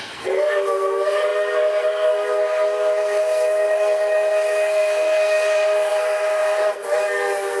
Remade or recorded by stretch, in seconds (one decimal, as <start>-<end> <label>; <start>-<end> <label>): 0.0-7.6 remade